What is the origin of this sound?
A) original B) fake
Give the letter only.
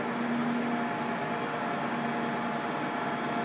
A